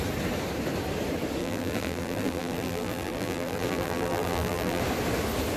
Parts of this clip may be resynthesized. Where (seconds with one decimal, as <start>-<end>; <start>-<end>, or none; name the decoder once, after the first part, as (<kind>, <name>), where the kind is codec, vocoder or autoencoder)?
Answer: 1.4-4.8 (vocoder, BigVGAN v2)